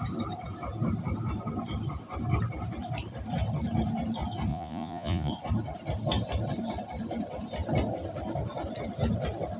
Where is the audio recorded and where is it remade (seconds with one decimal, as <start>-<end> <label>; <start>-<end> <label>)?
0.0-4.5 recorded; 4.5-5.3 remade; 5.3-9.6 recorded